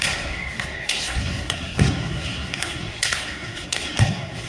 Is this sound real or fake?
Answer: fake